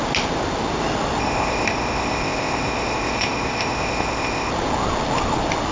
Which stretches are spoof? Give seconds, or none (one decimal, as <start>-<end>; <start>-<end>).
1.2-4.5